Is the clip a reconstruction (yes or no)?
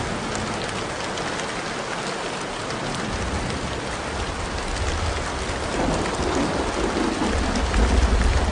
no